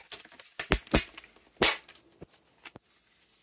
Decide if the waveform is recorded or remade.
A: recorded